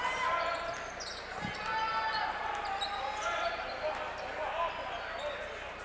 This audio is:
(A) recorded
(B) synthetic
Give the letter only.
A